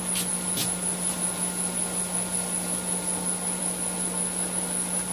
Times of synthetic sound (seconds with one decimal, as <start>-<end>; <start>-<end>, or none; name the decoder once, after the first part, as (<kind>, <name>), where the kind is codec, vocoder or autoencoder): none